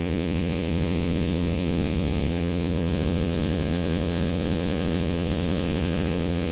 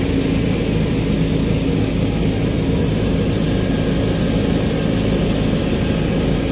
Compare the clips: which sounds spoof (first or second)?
first